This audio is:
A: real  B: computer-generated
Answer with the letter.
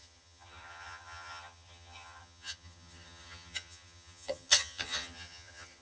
B